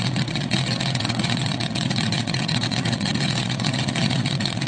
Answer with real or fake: fake